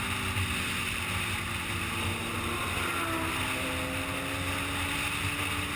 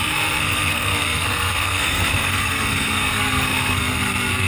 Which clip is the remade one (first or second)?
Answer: second